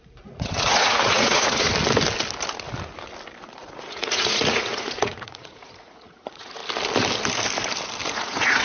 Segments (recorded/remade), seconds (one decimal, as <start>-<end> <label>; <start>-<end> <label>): 0.0-1.7 remade; 1.7-3.6 recorded; 3.6-6.6 remade; 6.6-8.1 recorded; 8.1-8.6 remade